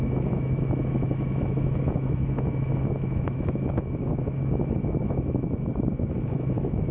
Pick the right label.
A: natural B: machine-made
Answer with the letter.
B